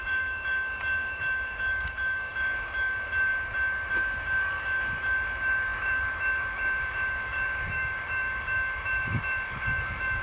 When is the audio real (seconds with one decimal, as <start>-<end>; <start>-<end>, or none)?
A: 3.3-3.9